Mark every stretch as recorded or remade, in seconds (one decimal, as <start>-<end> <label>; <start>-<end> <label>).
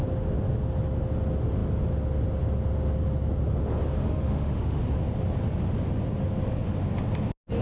0.0-4.0 recorded; 4.0-4.8 remade; 4.8-7.6 recorded